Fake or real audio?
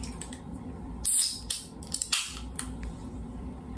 fake